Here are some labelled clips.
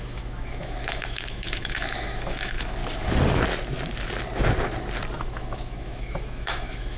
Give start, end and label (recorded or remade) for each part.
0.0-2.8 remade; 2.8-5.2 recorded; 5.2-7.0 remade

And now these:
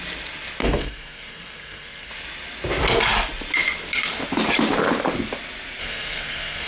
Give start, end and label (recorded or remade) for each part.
0.0-0.6 recorded; 0.6-2.1 remade; 2.1-5.8 recorded; 5.8-6.7 remade

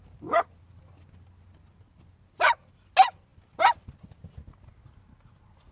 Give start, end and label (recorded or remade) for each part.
0.0-5.7 recorded

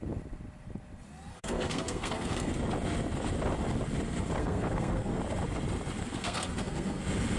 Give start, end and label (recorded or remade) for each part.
0.0-1.3 recorded; 1.3-2.5 remade; 2.5-4.4 recorded; 4.4-5.2 remade; 5.2-6.0 recorded; 6.0-7.0 remade; 7.0-7.4 recorded